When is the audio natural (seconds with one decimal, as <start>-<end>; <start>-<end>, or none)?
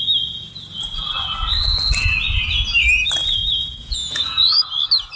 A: 0.0-3.2; 4.4-5.2